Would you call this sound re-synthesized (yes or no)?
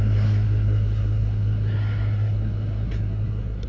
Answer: yes